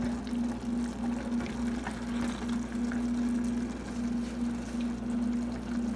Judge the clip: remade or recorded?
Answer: recorded